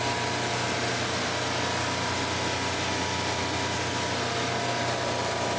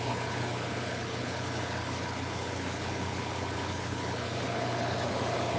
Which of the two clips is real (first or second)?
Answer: first